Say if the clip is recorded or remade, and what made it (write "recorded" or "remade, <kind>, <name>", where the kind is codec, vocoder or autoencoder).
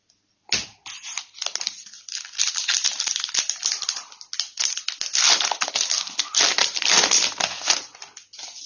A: recorded